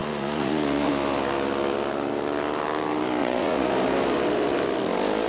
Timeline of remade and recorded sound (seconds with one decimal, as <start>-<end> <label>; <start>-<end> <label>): 0.0-0.9 remade; 0.9-3.2 recorded; 3.2-3.7 remade; 3.7-5.3 recorded